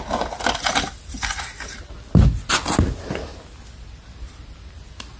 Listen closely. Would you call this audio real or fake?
real